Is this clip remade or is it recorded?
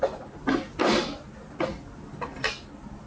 recorded